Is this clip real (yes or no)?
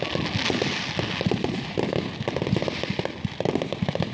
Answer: yes